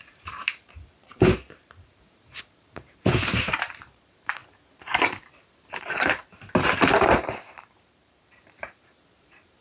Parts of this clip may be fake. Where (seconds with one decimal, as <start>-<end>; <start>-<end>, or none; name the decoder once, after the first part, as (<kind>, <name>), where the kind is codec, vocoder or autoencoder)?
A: 0.0-4.4 (vocoder, BigVGAN v2); 5.5-6.2; 7.1-9.6